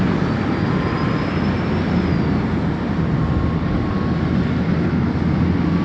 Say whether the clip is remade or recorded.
recorded